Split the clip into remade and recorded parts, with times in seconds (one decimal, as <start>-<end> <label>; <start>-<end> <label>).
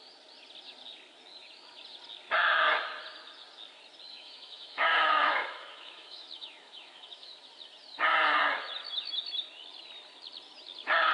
0.0-4.1 recorded; 4.1-7.3 remade; 7.3-11.1 recorded